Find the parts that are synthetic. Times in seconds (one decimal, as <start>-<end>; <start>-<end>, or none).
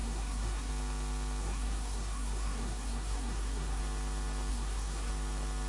0.0-0.7; 1.4-3.8; 4.5-5.1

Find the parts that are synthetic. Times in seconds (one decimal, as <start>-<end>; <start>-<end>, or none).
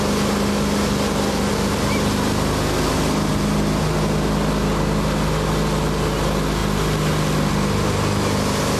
none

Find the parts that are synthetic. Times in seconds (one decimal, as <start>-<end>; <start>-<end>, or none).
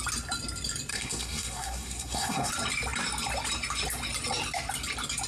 0.9-2.5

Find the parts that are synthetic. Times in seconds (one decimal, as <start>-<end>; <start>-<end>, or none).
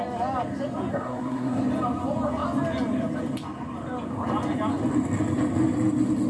0.9-1.6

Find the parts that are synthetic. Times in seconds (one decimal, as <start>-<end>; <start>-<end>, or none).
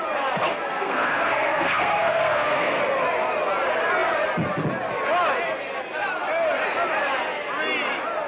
0.5-2.8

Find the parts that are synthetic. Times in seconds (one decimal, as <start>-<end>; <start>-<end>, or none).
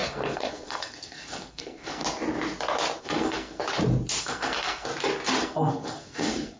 0.0-2.0; 3.0-3.6; 4.2-4.9; 5.4-6.6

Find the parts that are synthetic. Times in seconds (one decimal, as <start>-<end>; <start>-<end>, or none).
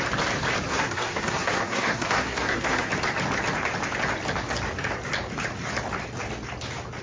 0.7-2.9